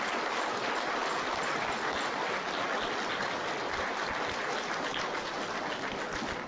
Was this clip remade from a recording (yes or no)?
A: no